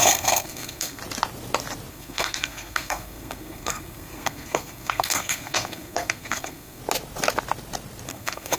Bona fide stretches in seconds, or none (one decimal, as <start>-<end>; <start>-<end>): 1.0-1.9; 6.8-8.1